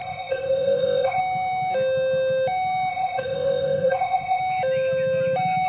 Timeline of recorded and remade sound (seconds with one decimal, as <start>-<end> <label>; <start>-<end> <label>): 0.0-1.2 remade; 1.2-2.9 recorded; 2.9-4.4 remade; 4.4-5.7 recorded